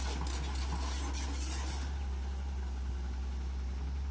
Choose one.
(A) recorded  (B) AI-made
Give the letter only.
A